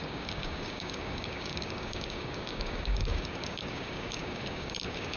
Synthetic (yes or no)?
yes